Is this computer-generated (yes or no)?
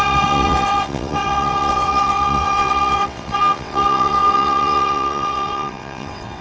yes